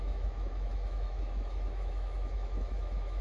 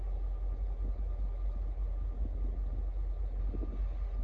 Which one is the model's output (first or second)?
first